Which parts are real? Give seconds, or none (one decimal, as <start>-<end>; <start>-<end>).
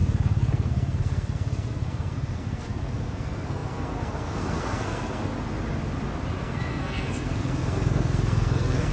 5.3-6.4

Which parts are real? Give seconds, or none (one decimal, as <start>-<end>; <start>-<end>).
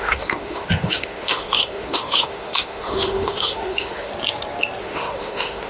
4.1-4.8